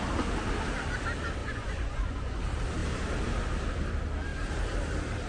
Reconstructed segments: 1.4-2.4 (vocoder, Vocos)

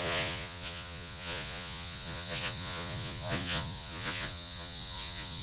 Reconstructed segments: 0.0-5.4 (vocoder, Vocos)